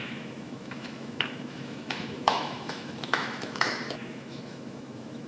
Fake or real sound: fake